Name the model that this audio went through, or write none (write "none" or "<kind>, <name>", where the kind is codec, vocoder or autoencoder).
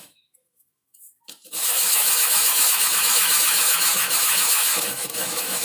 autoencoder, DAC-VAE